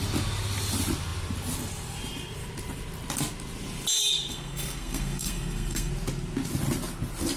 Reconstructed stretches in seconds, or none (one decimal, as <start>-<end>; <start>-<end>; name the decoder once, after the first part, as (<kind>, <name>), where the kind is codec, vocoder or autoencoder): 4.3-5.9 (codec, SNAC)